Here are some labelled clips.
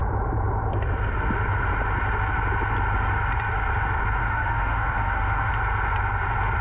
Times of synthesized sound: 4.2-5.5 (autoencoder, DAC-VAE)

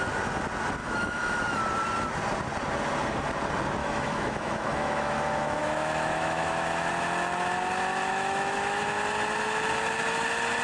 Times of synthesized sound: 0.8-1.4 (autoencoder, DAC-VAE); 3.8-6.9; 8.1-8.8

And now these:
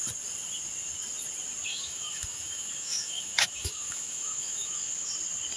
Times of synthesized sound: 1.7-5.1 (autoencoder, DAC-VAE)